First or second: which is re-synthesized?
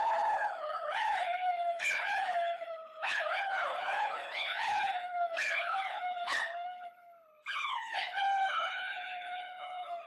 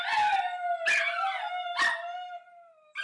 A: first